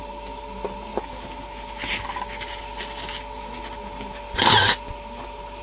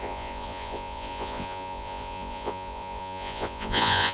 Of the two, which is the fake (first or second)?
second